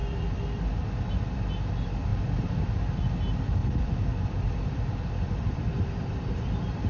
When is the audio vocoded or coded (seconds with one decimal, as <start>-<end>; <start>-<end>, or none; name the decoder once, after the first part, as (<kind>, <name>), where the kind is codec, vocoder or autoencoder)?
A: 0.0-0.6 (vocoder, BigVGAN v2); 2.1-2.7; 3.6-6.4